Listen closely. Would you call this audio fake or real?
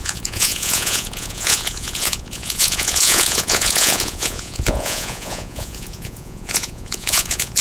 fake